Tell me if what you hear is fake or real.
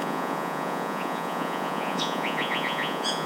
fake